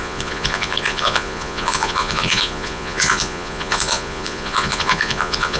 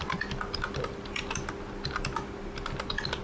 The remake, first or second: first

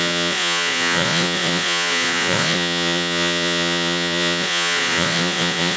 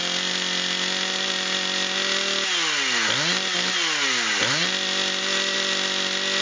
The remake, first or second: first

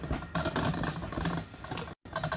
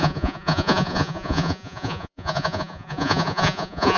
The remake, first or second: second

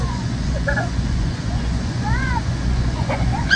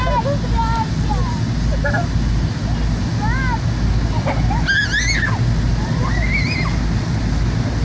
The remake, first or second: first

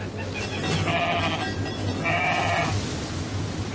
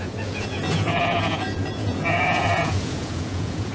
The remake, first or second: second